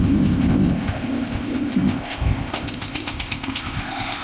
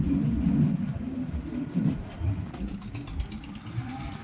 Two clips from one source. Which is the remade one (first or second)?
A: first